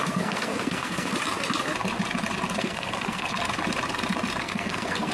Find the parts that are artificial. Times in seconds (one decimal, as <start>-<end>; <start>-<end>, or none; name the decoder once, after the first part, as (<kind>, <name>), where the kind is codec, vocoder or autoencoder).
0.0-1.1 (codec, SNAC); 2.6-3.3; 4.4-5.1